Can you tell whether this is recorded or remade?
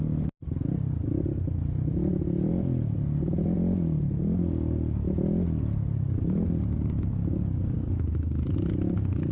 recorded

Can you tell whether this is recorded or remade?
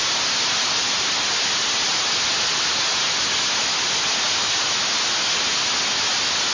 recorded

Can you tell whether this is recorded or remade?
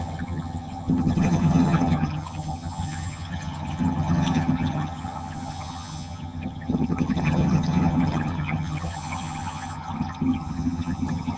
remade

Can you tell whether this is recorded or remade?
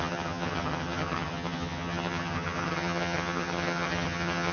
remade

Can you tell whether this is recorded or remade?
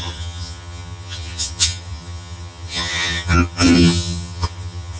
remade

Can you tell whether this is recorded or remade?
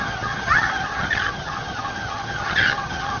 remade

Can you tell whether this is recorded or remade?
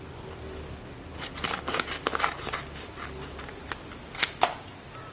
recorded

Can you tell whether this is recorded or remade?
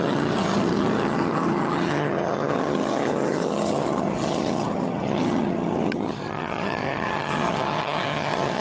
remade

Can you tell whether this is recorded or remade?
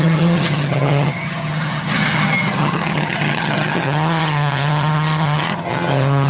remade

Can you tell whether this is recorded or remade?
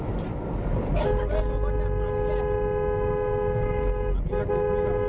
recorded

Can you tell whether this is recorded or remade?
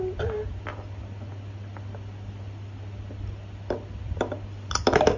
recorded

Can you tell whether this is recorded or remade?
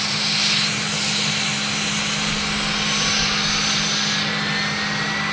recorded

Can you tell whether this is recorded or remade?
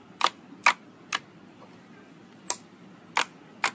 recorded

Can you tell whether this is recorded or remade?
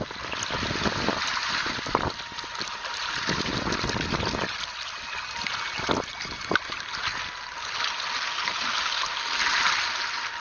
recorded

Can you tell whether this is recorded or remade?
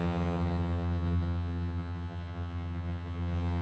remade